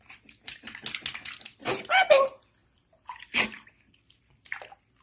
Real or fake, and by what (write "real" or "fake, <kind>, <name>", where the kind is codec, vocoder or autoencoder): real